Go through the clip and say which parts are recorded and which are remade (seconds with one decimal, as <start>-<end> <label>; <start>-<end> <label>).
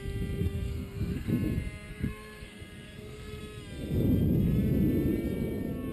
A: 0.0-0.4 recorded; 0.4-1.3 remade; 1.3-1.9 recorded; 1.9-3.4 remade; 3.4-5.9 recorded